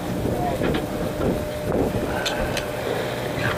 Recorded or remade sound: recorded